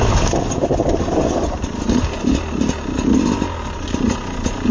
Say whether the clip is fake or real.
real